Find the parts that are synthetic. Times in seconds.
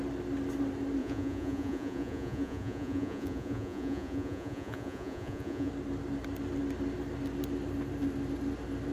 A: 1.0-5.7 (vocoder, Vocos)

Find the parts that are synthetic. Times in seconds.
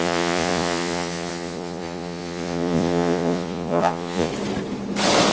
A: 0.0-4.3 (vocoder, Vocos)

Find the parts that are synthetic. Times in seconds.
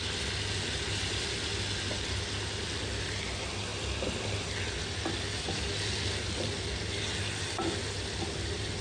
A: none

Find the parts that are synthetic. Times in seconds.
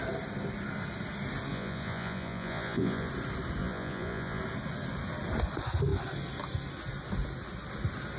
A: 1.5-3.1 (vocoder, Vocos); 3.6-4.4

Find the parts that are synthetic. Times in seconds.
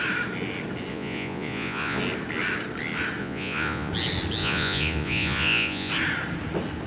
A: 0.9-2.0 (vocoder, Vocos); 3.2-3.9; 4.4-5.9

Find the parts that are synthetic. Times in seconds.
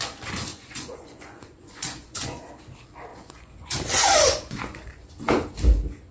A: 0.5-2.5 (vocoder, Vocos); 3.1-5.1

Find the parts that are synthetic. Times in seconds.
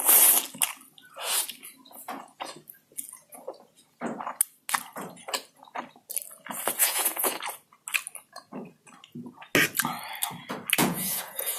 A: 6.8-7.4 (vocoder, Vocos); 10.8-11.6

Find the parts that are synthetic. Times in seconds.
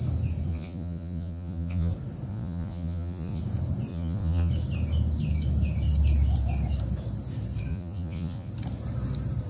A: 0.5-1.9 (vocoder, Vocos); 2.3-3.4; 3.9-4.5; 7.7-8.5